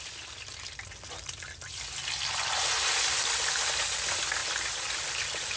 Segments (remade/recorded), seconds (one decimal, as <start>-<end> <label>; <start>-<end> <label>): 0.0-5.6 recorded